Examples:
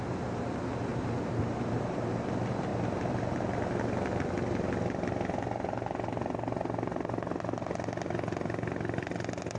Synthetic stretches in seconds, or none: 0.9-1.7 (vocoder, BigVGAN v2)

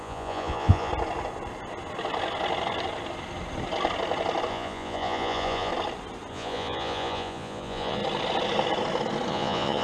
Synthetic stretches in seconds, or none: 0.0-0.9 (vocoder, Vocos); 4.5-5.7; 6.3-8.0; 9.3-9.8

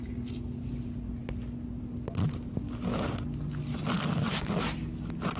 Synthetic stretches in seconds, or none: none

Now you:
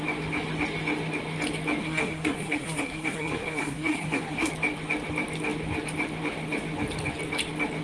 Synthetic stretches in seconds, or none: 1.8-4.5 (codec, SNAC)

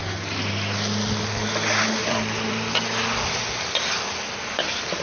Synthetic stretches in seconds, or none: 2.0-2.7 (vocoder, BigVGAN v2)

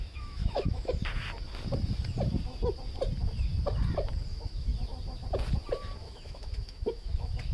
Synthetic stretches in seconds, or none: 0.0-1.0 (autoencoder, DAC-VAE); 4.3-4.7; 6.0-7.5

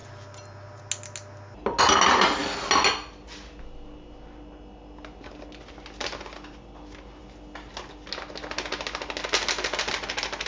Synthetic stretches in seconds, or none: none